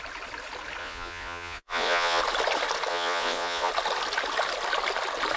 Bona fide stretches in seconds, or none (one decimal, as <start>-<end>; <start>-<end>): 0.0-0.8; 2.2-2.9; 3.7-5.4